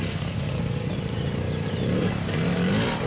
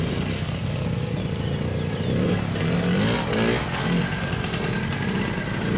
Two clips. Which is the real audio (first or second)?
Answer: second